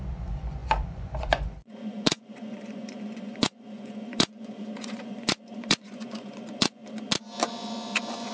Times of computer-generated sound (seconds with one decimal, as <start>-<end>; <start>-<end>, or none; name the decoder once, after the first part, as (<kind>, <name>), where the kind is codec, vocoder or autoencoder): 0.0-6.8 (vocoder, Vocos); 7.5-8.3